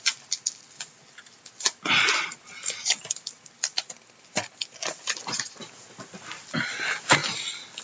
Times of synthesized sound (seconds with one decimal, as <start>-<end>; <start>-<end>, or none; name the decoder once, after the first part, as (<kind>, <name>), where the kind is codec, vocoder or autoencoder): none